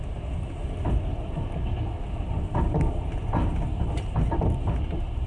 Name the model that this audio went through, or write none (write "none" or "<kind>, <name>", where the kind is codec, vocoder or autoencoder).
none